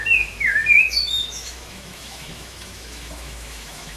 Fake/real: fake